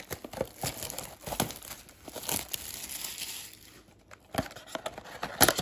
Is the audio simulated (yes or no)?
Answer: no